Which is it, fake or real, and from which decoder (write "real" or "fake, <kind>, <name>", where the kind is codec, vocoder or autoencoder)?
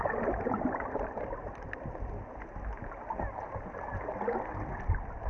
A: real